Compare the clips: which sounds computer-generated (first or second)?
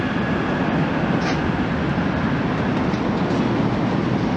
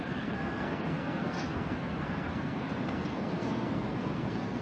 second